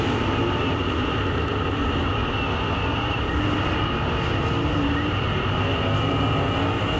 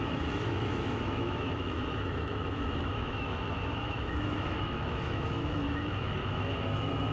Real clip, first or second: first